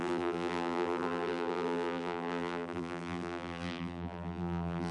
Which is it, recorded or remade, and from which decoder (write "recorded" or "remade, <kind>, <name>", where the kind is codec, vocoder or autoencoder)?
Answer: remade, vocoder, BigVGAN v2